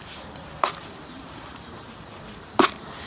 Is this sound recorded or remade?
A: remade